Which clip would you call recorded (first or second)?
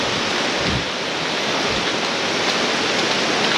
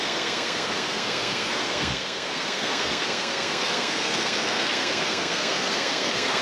first